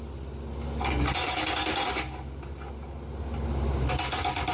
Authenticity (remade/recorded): recorded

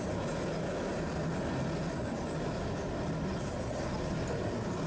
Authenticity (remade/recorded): recorded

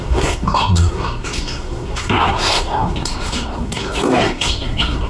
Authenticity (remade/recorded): remade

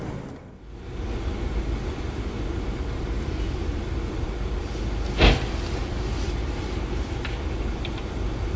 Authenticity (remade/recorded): recorded